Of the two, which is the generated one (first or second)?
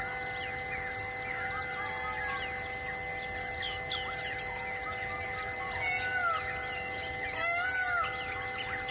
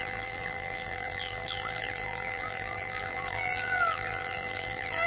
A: second